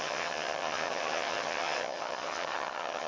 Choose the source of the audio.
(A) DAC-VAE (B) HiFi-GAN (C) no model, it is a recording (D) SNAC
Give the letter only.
B